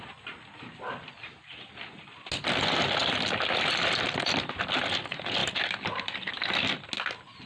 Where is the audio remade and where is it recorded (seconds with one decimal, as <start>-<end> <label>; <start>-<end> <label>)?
0.0-3.0 recorded; 3.0-4.9 remade; 4.9-5.4 recorded; 5.4-6.3 remade; 6.3-7.5 recorded

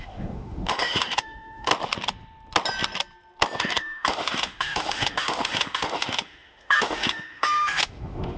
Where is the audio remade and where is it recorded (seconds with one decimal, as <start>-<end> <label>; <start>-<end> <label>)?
0.0-1.7 remade; 1.7-3.6 recorded; 3.6-8.4 remade

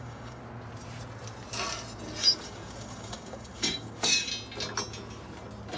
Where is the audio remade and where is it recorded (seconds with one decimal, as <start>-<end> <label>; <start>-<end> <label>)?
0.0-0.4 remade; 0.4-2.2 recorded; 2.2-4.3 remade; 4.3-5.8 recorded

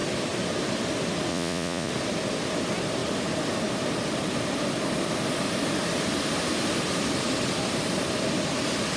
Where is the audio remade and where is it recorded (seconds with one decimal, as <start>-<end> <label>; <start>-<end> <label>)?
0.0-1.3 recorded; 1.3-1.9 remade; 1.9-9.0 recorded

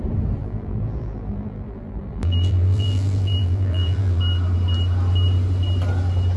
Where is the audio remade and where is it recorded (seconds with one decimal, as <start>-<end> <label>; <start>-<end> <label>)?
0.0-0.4 recorded; 0.4-4.2 remade; 4.2-6.4 recorded